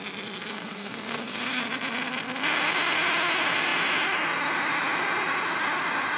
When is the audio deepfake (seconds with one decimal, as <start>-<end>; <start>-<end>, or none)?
0.5-1.6